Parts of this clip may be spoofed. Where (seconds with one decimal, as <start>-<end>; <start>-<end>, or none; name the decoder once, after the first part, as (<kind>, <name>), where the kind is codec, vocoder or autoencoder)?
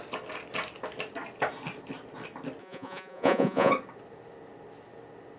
2.6-3.7 (vocoder, Vocos)